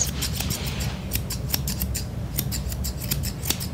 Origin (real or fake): real